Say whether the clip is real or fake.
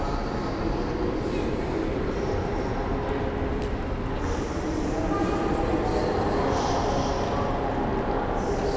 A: real